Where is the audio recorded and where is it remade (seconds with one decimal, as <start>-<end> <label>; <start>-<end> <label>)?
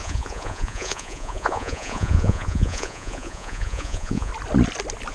0.0-4.3 remade; 4.3-5.1 recorded